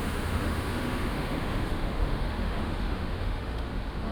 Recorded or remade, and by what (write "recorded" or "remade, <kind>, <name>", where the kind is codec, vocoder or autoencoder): remade, autoencoder, DAC-VAE